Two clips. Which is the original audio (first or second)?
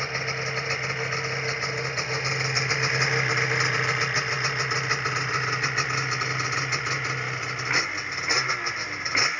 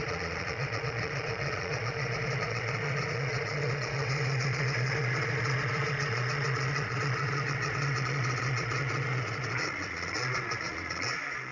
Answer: first